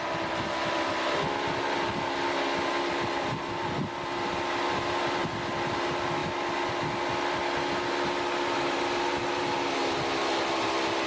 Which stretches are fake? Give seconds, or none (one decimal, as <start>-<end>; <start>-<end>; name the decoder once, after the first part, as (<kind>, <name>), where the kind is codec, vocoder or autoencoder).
none